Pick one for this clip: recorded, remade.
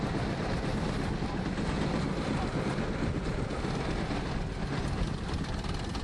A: recorded